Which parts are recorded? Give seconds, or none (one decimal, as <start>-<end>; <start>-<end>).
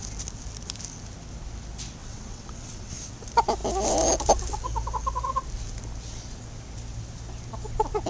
0.0-2.0; 2.9-8.1